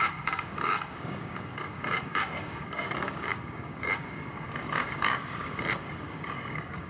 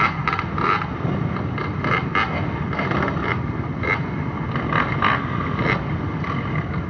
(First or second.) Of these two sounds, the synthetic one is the first